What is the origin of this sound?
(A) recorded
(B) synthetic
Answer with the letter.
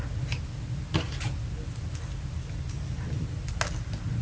A